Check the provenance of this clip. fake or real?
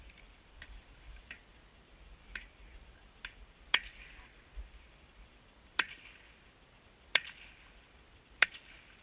fake